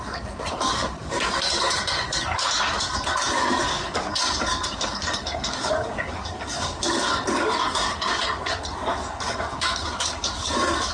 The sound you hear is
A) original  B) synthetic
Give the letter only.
B